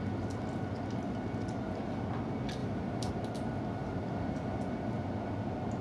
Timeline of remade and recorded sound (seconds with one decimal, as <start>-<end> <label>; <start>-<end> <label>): 0.0-2.6 recorded; 2.6-3.1 remade; 3.1-3.8 recorded; 3.8-4.6 remade; 4.6-5.8 recorded